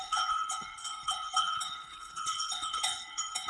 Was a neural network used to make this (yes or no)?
yes